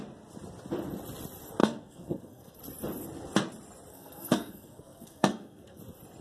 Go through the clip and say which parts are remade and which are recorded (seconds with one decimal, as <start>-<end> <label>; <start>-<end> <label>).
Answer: 0.0-1.6 recorded; 1.6-2.6 remade; 2.6-3.9 recorded; 3.9-5.8 remade; 5.8-6.2 recorded